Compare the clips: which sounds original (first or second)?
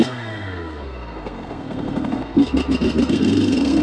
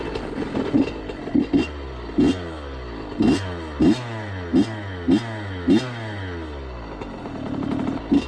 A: second